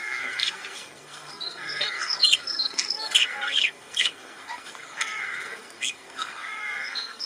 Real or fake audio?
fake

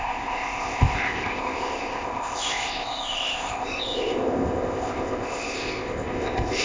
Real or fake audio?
fake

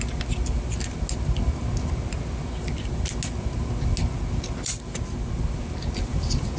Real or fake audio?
real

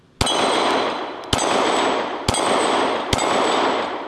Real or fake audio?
real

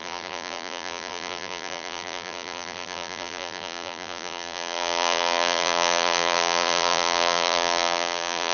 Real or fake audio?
fake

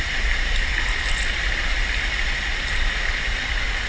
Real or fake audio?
real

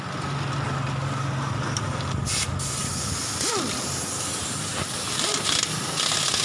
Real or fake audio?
real